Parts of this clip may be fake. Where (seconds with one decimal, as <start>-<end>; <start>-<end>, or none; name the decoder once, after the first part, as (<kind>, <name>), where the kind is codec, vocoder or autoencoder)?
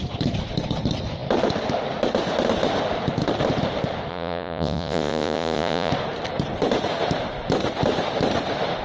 4.1-5.9 (vocoder, Vocos)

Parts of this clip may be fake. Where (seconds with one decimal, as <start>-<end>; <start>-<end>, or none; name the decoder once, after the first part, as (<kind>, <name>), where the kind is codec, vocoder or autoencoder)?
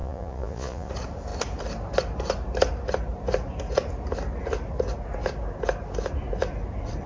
0.0-0.9 (vocoder, Vocos)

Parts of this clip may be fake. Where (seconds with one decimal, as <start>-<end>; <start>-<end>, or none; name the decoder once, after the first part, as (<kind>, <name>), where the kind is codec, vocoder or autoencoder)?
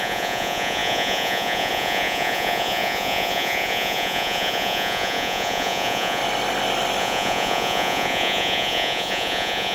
0.0-6.2 (vocoder, Vocos); 7.0-9.7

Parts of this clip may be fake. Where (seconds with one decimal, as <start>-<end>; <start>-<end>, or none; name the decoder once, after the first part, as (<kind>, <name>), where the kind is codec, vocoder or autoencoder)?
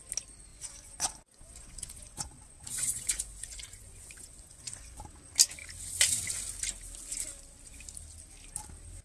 0.5-5.0 (vocoder, Vocos)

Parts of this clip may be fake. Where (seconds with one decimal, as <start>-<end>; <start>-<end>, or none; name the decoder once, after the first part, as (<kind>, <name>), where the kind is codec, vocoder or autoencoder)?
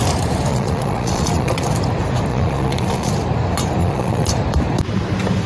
0.5-1.7 (vocoder, Vocos); 2.3-3.1; 3.8-4.3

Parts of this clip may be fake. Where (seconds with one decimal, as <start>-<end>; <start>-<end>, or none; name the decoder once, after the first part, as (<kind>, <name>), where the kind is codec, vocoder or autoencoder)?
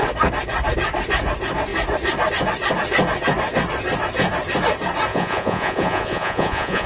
5.1-6.9 (vocoder, Vocos)